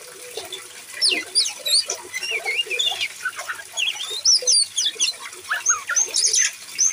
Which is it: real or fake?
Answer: real